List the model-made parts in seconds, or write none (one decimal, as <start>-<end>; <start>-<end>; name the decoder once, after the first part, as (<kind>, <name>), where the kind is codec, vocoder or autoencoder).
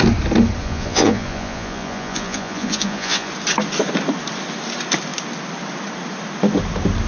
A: 0.6-3.3 (vocoder, Vocos)